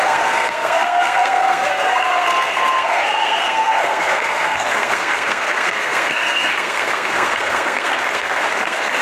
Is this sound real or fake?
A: fake